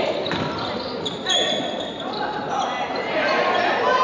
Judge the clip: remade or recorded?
recorded